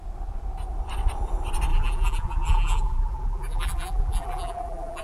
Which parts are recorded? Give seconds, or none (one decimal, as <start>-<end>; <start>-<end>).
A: 0.0-1.7